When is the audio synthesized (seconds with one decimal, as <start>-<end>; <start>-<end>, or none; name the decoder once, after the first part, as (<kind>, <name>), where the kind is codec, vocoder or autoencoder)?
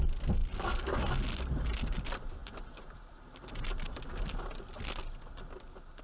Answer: none